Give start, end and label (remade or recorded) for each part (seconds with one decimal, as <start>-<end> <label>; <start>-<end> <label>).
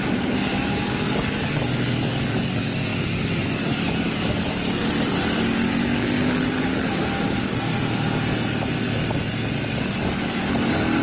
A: 0.0-7.7 remade; 7.7-9.7 recorded; 9.7-11.0 remade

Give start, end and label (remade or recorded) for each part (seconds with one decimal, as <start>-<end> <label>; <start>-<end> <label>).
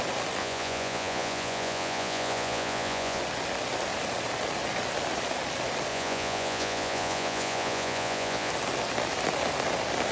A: 0.0-0.4 recorded; 0.4-3.2 remade; 3.2-5.9 recorded; 5.9-8.5 remade; 8.5-10.1 recorded